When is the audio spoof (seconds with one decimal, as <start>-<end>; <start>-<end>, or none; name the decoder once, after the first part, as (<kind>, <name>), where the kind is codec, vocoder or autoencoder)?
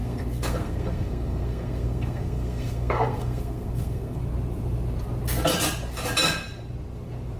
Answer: 0.0-4.2 (codec, SNAC)